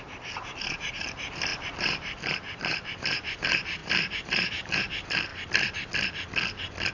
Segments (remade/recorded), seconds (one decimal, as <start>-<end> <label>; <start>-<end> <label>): 0.0-5.3 remade; 5.3-6.9 recorded